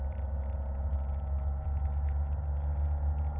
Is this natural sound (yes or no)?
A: yes